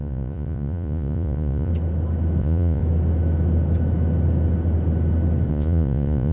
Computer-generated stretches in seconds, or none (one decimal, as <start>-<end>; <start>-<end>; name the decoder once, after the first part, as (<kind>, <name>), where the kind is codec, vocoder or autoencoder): 0.0-1.7 (vocoder, Vocos); 2.4-2.8; 5.5-6.3